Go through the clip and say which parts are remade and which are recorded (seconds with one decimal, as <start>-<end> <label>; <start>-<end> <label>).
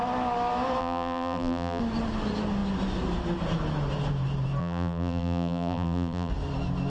0.0-0.8 recorded; 0.8-1.8 remade; 1.8-4.6 recorded; 4.6-6.3 remade; 6.3-6.9 recorded